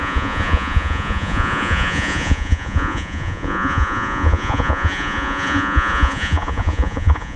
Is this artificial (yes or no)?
yes